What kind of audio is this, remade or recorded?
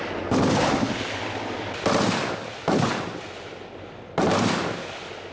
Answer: recorded